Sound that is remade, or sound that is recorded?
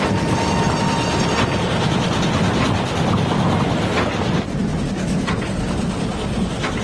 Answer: recorded